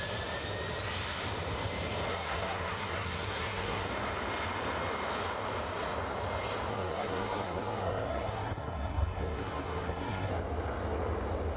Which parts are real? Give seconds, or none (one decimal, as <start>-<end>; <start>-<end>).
0.0-2.1; 3.9-6.7; 10.3-11.6